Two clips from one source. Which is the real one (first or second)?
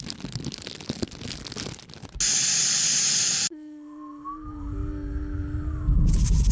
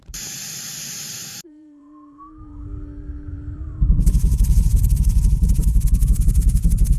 first